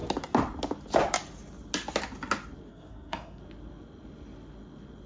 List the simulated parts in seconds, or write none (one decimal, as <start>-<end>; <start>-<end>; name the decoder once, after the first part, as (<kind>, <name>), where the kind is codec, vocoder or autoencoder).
2.7-3.4 (codec, SNAC)